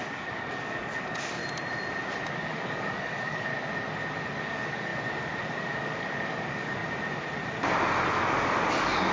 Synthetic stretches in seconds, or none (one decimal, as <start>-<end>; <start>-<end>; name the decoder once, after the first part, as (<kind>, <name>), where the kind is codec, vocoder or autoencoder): 0.0-1.4 (codec, DAC); 2.3-3.5; 4.4-4.9; 5.5-6.8; 8.1-9.1